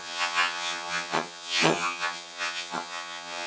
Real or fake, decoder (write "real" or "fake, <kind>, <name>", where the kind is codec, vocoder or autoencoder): fake, vocoder, HiFi-GAN